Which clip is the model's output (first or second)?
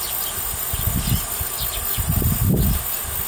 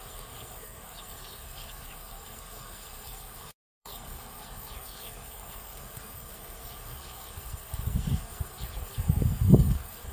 second